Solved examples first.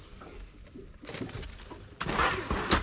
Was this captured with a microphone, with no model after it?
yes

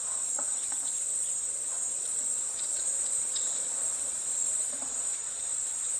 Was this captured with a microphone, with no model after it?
no